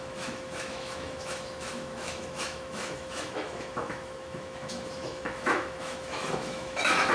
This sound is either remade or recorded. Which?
remade